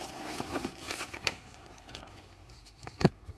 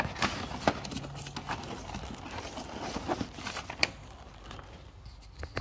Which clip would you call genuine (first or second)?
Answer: second